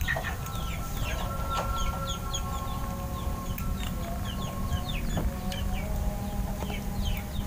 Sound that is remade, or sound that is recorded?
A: recorded